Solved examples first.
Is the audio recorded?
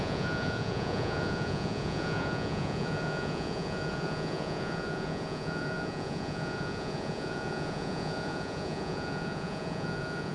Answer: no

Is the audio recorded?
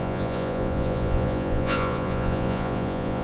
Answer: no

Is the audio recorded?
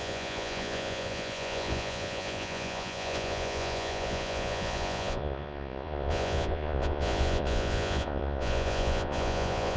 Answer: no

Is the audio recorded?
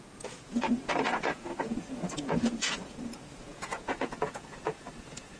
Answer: no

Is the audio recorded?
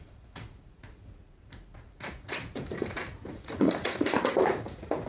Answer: no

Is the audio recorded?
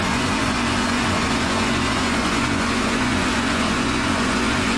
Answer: no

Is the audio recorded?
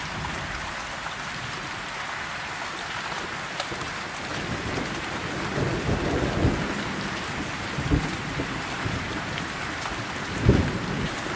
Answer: yes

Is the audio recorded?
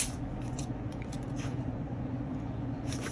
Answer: no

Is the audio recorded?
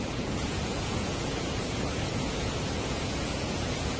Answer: no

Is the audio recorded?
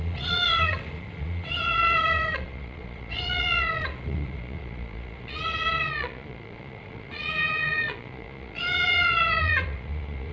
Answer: no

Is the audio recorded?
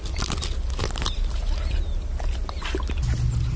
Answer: yes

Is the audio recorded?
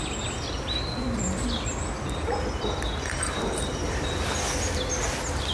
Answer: yes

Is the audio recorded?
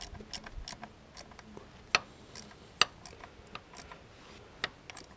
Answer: yes